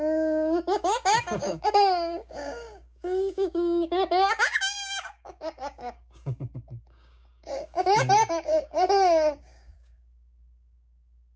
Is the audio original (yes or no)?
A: no